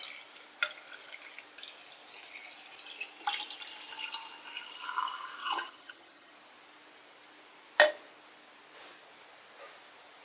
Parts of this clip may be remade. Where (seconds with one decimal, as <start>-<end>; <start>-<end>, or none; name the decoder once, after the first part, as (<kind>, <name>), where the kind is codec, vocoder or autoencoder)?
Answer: 5.4-6.3 (vocoder, HiFi-GAN)